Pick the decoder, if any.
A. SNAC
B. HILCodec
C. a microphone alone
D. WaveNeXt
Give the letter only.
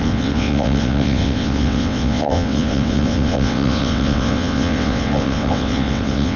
D